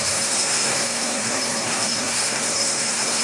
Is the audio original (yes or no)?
no